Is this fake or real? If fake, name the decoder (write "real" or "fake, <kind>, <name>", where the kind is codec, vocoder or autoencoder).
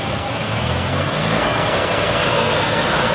fake, codec, SNAC